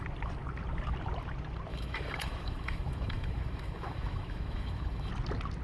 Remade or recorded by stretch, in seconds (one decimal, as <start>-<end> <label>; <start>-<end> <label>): 0.0-1.7 recorded; 1.7-5.1 remade; 5.1-5.6 recorded